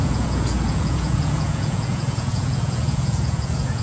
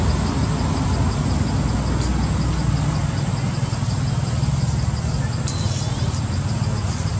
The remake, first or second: first